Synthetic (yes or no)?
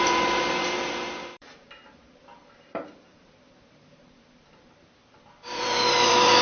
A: yes